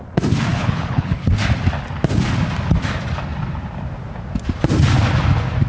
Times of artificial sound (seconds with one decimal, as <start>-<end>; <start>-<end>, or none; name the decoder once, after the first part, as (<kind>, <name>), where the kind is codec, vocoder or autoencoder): 0.5-1.3 (codec, HILCodec)